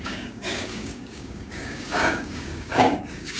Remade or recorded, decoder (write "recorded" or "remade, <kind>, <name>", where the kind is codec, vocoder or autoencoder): remade, codec, DAC